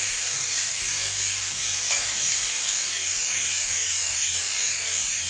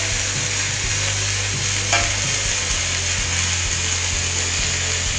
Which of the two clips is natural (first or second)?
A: second